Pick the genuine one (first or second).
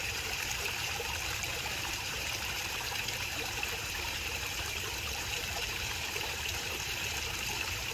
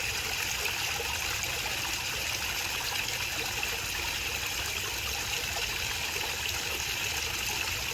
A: second